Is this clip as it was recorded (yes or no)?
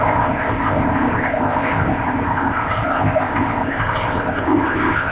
no